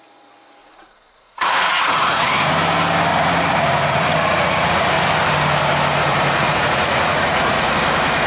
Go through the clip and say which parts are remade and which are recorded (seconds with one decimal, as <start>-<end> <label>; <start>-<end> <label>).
0.0-0.6 recorded; 0.6-2.3 remade; 2.3-3.1 recorded; 3.1-4.8 remade; 4.8-6.0 recorded; 6.0-7.7 remade; 7.7-8.3 recorded